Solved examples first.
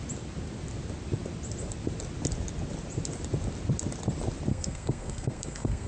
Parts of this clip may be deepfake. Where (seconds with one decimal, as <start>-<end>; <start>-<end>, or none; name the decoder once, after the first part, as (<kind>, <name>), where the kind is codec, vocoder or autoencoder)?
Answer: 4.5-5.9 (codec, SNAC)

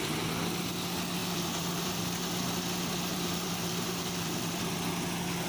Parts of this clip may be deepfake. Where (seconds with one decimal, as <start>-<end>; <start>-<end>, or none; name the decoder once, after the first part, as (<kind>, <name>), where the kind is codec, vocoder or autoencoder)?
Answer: 1.2-2.0 (vocoder, BigVGAN v2); 3.1-4.6

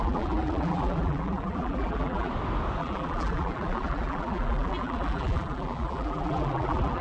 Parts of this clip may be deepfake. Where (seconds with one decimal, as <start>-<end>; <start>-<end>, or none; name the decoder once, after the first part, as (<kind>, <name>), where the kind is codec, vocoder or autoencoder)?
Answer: 0.0-2.3 (vocoder, BigVGAN v2); 2.8-7.0